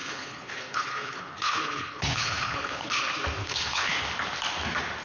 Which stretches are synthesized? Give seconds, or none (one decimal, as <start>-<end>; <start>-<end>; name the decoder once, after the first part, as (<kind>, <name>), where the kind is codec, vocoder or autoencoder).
0.0-3.0 (codec, HILCodec); 3.4-4.0